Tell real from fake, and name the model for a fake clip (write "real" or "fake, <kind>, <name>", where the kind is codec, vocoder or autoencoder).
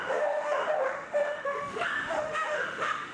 fake, autoencoder, DAC-VAE